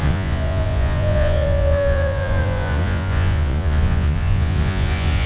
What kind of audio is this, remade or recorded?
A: remade